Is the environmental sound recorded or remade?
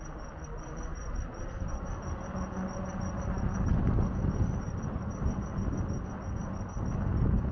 recorded